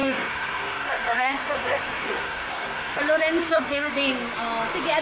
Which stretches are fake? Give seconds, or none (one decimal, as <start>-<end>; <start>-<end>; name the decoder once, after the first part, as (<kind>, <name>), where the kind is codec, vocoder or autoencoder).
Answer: 0.0-3.0 (codec, SNAC); 3.4-3.9